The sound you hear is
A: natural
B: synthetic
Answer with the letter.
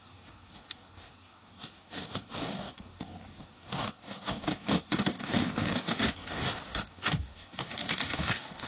B